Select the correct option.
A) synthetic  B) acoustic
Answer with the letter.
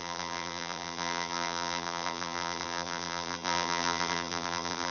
A